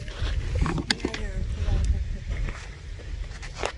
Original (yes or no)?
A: yes